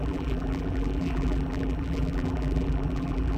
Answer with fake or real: fake